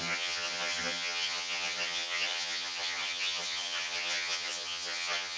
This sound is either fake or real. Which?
fake